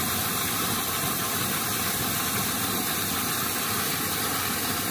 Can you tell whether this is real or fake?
real